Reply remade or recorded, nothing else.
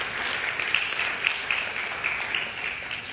recorded